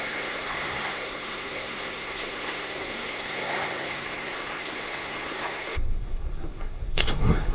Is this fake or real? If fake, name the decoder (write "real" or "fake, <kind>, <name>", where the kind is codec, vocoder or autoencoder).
fake, codec, SNAC